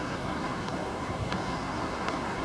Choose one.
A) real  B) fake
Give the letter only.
B